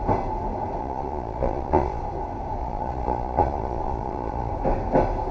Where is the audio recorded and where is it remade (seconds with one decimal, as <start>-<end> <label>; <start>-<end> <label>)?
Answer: 0.0-0.8 recorded; 0.8-2.0 remade; 2.0-2.6 recorded; 2.6-4.5 remade; 4.5-5.3 recorded